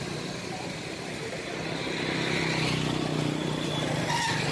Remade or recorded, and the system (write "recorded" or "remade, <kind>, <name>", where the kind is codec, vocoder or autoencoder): recorded